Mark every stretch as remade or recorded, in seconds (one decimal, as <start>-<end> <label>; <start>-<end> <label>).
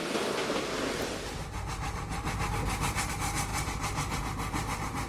0.0-5.1 recorded